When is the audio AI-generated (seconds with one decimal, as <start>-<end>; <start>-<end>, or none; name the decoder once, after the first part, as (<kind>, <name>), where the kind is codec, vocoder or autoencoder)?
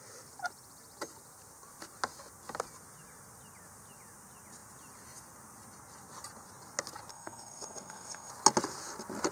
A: 7.1-8.3 (codec, SNAC)